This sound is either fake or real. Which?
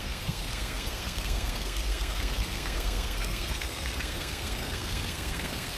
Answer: fake